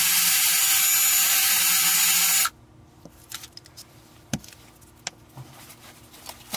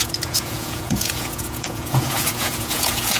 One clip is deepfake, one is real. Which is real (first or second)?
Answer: first